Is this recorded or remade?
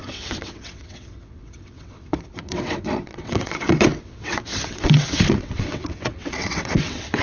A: remade